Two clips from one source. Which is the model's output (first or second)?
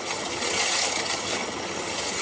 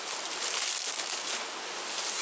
first